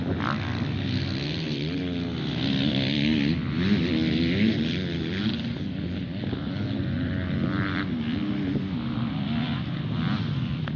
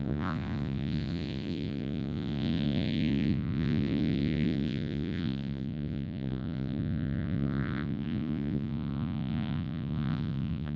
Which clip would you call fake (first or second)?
second